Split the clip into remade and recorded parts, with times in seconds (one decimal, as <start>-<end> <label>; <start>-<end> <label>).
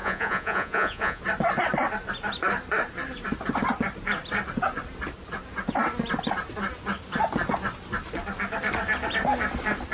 0.0-1.2 remade; 1.2-9.9 recorded